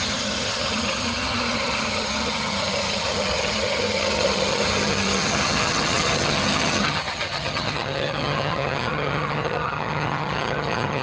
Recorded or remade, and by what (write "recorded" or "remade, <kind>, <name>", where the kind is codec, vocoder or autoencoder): remade, vocoder, HiFi-GAN